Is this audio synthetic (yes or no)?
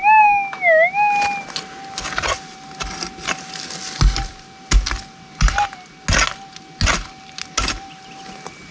no